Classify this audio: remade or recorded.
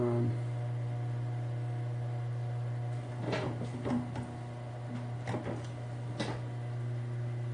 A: recorded